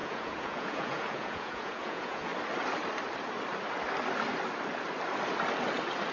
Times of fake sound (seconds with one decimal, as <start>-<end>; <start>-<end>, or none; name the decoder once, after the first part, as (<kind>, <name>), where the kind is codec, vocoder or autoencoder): 0.0-2.3 (vocoder, Vocos)